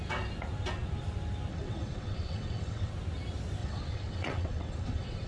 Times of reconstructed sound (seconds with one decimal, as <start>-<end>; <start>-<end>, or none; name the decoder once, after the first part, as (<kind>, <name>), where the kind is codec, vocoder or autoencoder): 1.5-2.9 (vocoder, WaveNeXt); 3.6-5.3